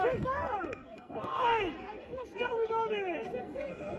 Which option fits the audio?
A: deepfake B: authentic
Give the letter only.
A